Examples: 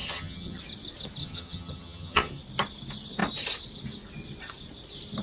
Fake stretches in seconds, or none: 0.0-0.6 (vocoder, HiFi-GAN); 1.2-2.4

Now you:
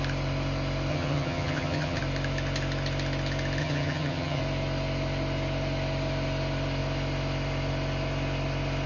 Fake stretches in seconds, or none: 0.9-2.0 (vocoder, HiFi-GAN); 3.6-4.4

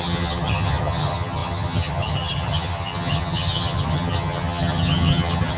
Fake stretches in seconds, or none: 0.0-5.6 (vocoder, HiFi-GAN)